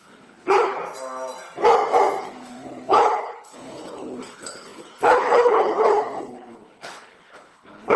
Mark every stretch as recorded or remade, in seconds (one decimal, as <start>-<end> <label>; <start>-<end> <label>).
0.0-0.8 remade; 0.8-2.2 recorded; 2.2-8.0 remade